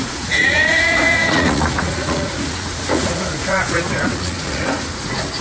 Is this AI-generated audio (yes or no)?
yes